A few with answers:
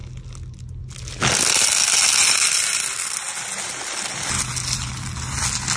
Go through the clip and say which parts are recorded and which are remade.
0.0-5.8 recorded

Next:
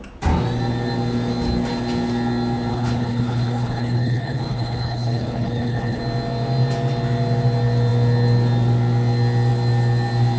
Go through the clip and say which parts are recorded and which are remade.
0.0-2.7 recorded; 2.7-6.0 remade; 6.0-10.4 recorded

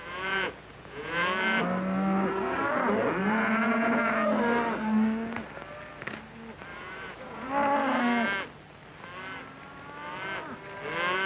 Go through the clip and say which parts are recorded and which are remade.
0.0-1.6 remade; 1.6-3.2 recorded; 3.2-4.1 remade; 4.1-6.7 recorded; 6.7-7.5 remade; 7.5-11.3 recorded

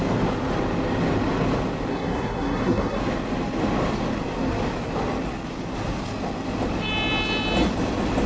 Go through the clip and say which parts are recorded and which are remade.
0.0-1.9 recorded; 1.9-3.0 remade; 3.0-8.3 recorded